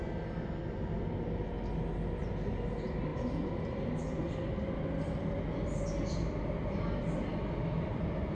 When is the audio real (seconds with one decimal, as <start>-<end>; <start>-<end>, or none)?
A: 0.0-8.3